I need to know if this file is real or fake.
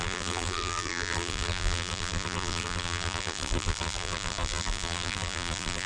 fake